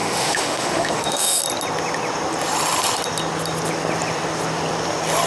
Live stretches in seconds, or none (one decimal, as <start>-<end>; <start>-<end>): 1.4-5.3

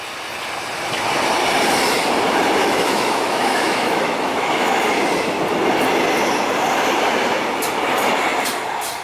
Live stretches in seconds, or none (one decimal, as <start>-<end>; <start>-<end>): 0.0-2.6; 4.8-9.0

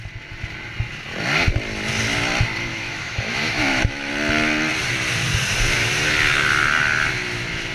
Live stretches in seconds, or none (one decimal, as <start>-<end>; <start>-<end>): 0.0-2.7; 4.1-7.7

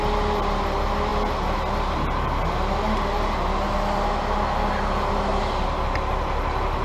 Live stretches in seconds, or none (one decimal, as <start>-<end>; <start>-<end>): 0.0-6.8

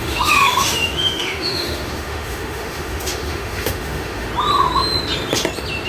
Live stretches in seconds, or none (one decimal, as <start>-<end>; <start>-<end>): 4.3-5.9

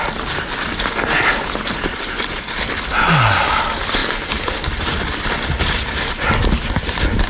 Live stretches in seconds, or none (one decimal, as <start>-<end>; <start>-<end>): 0.0-7.3